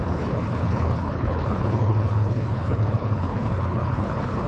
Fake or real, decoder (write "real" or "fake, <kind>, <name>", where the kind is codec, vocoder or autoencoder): fake, codec, HILCodec